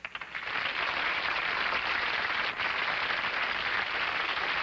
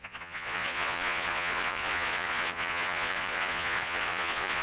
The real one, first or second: first